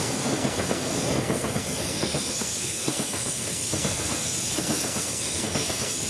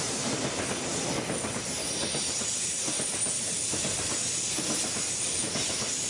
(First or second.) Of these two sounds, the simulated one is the first